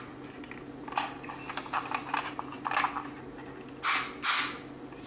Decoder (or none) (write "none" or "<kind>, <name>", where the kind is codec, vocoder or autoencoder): none